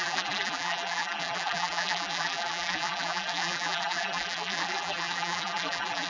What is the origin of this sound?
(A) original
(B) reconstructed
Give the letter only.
B